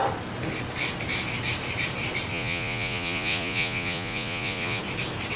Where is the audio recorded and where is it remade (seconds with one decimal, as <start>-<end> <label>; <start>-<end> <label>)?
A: 0.0-2.3 recorded; 2.3-4.8 remade; 4.8-5.4 recorded